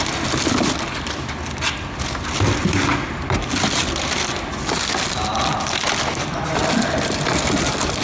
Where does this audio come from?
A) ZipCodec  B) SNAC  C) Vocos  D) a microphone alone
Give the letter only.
D